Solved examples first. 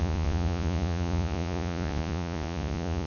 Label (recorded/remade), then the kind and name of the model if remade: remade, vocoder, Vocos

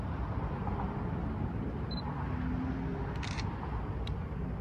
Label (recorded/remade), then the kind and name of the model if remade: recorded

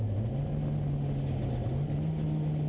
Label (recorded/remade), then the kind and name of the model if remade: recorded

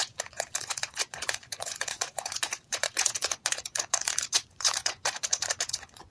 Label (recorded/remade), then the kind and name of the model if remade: remade, vocoder, Vocos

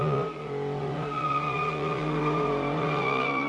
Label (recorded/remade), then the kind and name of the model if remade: remade, vocoder, Vocos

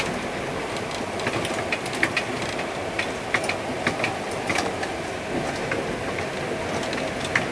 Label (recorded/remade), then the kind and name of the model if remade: recorded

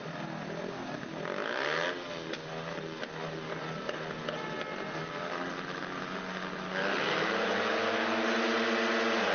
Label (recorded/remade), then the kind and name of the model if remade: recorded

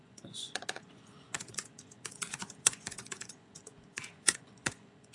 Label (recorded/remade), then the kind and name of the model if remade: remade, vocoder, Vocos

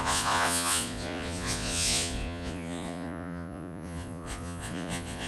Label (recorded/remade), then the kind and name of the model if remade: remade, vocoder, Vocos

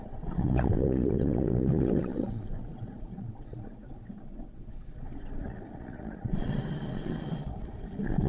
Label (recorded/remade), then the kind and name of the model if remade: remade, vocoder, Vocos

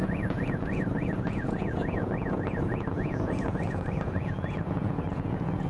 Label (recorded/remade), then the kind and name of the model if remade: remade, vocoder, Vocos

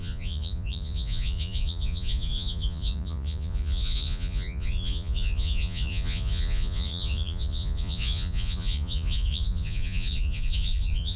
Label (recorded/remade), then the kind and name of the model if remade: remade, vocoder, Vocos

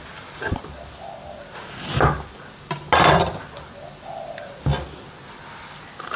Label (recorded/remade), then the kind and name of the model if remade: recorded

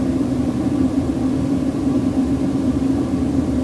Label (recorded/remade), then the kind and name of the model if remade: recorded